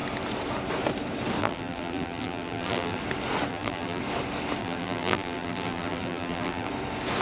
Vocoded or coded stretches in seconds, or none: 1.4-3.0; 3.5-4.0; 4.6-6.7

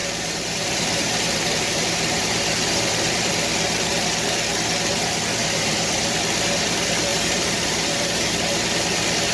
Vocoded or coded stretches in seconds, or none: 0.0-3.3; 5.4-6.2; 7.1-8.3

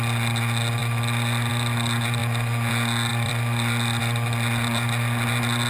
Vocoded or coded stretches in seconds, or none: 0.8-1.5; 3.1-4.0

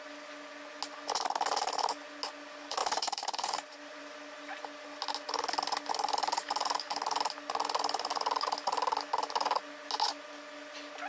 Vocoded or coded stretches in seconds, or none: 2.8-4.0

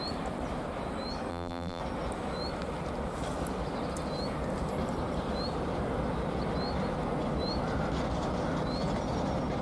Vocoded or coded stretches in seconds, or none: 1.3-1.8